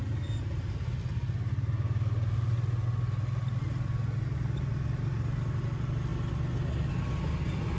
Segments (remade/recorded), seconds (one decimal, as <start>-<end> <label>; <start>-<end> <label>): 0.0-7.8 recorded

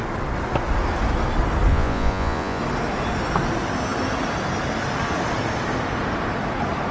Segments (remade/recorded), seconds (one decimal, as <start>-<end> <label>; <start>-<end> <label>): 0.0-1.7 recorded; 1.7-2.6 remade; 2.6-6.9 recorded